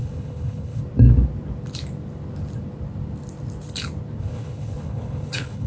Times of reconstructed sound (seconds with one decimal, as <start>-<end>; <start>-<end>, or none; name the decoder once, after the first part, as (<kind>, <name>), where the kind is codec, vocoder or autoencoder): 0.0-0.8 (codec, HILCodec); 4.2-5.7